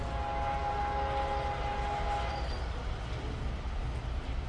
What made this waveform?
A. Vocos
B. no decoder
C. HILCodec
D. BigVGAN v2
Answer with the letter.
B